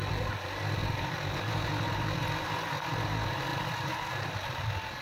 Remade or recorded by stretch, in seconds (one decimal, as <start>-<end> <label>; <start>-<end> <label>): 0.0-5.0 recorded